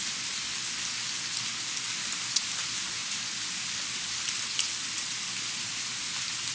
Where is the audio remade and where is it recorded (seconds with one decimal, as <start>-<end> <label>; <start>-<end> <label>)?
0.0-6.5 recorded

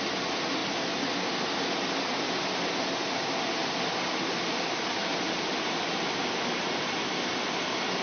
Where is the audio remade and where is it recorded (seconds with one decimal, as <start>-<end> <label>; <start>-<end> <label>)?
0.0-8.0 recorded